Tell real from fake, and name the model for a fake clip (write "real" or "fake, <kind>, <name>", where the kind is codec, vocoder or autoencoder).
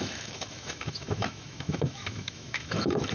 fake, autoencoder, DAC-VAE